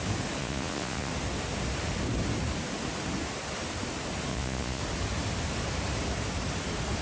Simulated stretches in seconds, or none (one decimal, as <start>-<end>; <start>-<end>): 0.4-1.1; 4.3-4.8